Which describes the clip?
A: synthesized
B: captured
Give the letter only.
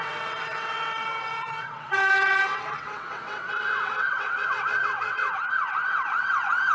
A